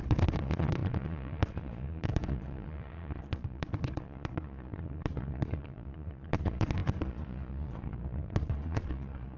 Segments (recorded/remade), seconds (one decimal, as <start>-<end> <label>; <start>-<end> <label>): 0.0-9.4 remade

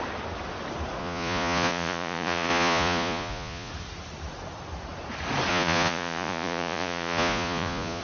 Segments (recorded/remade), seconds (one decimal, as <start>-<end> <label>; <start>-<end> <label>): 0.0-1.0 recorded; 1.0-3.7 remade; 3.7-5.5 recorded; 5.5-8.0 remade